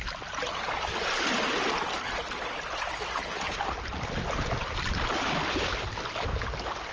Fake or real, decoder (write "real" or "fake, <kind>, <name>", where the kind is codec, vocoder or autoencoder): real